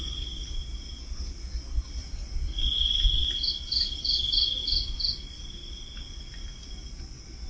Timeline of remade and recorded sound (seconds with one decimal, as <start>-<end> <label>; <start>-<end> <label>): 0.0-2.0 recorded; 2.0-3.2 remade; 3.2-4.6 recorded; 4.6-7.0 remade; 7.0-7.5 recorded